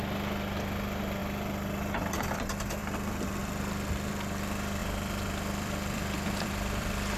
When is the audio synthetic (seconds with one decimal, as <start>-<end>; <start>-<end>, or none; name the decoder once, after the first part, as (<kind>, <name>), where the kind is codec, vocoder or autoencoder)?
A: 3.4-4.1 (vocoder, BigVGAN v2); 4.8-7.2